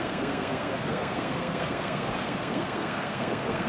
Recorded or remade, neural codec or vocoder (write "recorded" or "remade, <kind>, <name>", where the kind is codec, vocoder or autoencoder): remade, codec, SNAC